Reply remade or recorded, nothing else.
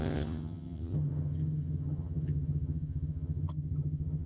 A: remade